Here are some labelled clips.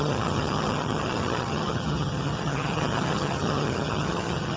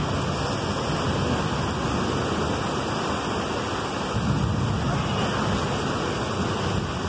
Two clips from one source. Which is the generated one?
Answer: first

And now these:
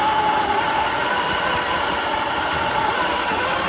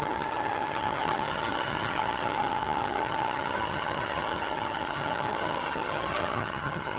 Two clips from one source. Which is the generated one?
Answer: second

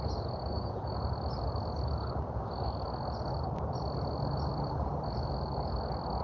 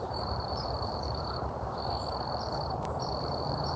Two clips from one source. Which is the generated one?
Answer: second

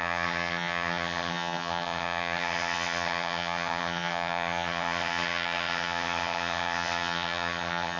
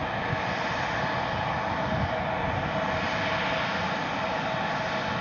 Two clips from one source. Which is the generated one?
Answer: first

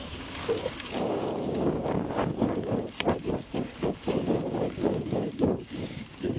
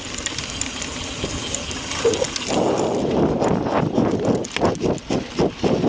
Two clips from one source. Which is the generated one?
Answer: first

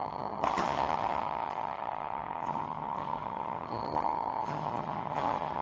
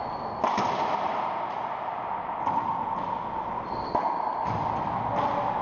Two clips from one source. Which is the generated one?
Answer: first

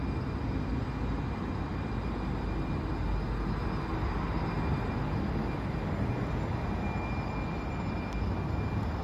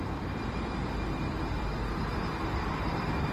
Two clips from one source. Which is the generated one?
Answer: second